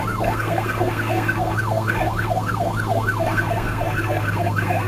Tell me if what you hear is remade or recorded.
remade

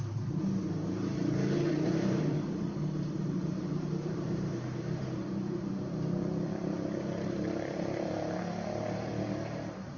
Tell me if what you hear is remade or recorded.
remade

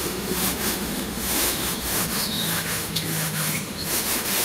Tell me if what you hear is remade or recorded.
remade